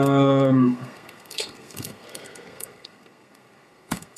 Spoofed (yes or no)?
yes